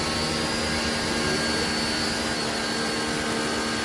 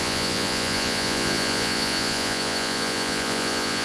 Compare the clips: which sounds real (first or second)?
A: first